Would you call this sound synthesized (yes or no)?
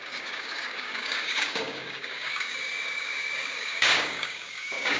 yes